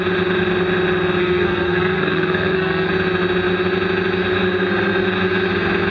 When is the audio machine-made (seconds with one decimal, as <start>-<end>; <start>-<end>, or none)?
1.2-2.9